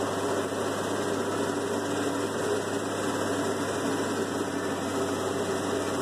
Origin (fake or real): real